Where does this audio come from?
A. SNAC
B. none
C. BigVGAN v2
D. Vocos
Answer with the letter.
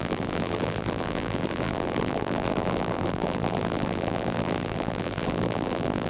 C